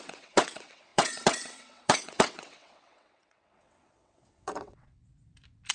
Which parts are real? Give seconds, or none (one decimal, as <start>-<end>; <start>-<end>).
5.0-5.7